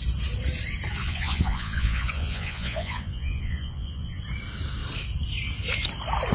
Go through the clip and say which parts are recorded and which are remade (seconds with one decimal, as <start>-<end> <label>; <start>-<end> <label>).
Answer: 0.0-1.0 recorded; 1.0-4.2 remade; 4.2-6.3 recorded